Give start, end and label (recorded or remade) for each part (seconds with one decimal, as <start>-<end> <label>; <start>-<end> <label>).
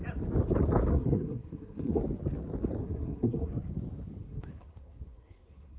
0.0-0.9 recorded; 0.9-2.0 remade; 2.0-2.8 recorded; 2.8-3.5 remade; 3.5-4.2 recorded; 4.2-5.8 remade